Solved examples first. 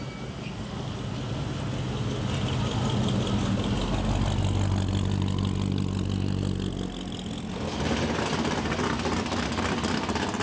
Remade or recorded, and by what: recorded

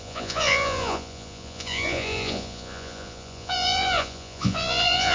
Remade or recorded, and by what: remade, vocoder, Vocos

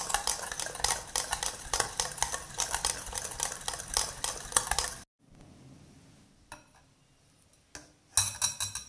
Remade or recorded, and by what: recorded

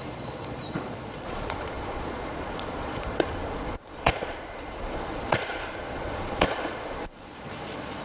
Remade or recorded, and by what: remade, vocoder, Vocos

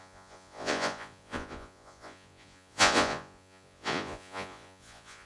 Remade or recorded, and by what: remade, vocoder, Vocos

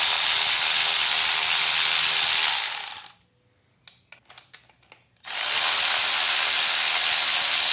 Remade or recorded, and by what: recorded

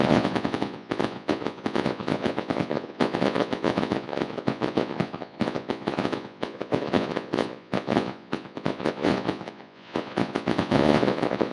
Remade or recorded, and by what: remade, vocoder, Vocos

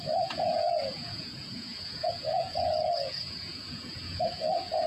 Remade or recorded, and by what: remade, vocoder, Vocos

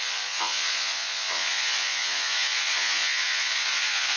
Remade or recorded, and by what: remade, vocoder, Vocos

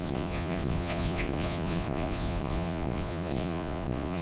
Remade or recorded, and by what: remade, vocoder, Vocos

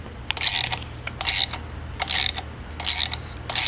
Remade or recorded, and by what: recorded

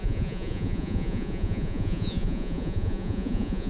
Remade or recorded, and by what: remade, vocoder, Vocos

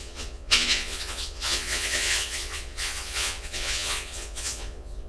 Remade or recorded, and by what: remade, vocoder, Vocos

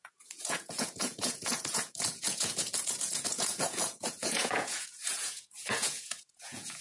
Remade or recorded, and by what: remade, vocoder, Vocos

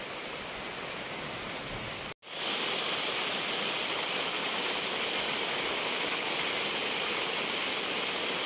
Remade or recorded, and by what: recorded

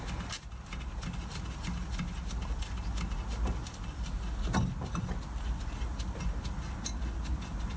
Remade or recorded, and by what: recorded